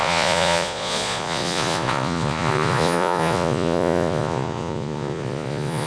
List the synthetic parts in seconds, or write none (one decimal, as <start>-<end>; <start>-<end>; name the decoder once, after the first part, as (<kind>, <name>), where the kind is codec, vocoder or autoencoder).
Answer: 0.0-5.9 (vocoder, Vocos)